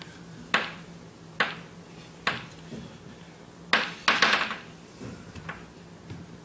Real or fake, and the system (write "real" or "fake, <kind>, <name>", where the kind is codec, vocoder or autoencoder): real